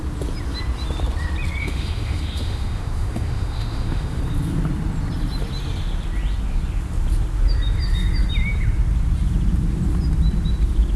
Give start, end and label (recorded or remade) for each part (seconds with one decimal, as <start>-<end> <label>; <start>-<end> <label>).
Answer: 0.0-1.6 recorded; 1.6-4.2 remade; 4.2-11.0 recorded